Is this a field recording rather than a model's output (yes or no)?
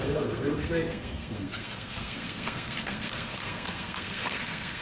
no